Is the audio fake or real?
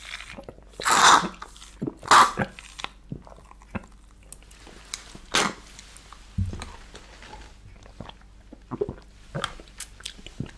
real